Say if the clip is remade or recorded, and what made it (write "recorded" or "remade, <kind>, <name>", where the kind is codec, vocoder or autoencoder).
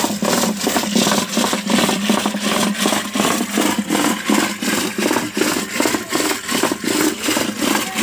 recorded